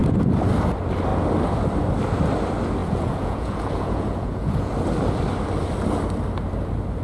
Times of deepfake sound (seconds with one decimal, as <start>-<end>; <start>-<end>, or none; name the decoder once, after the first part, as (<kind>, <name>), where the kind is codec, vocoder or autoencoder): 2.8-4.7 (vocoder, Vocos)